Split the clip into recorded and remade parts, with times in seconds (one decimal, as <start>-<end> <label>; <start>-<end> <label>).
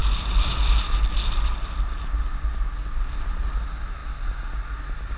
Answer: 0.0-5.2 recorded